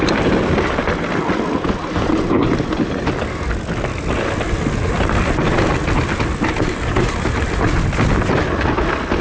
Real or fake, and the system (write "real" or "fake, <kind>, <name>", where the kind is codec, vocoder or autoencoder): real